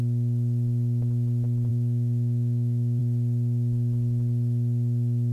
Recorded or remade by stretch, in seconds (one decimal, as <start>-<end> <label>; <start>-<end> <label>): 0.0-1.7 recorded; 1.7-3.0 remade; 3.0-5.3 recorded